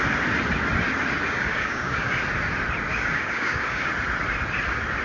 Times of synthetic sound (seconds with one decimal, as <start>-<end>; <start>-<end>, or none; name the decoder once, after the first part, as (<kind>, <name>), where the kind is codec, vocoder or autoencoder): 1.2-2.2 (codec, DAC); 2.9-3.9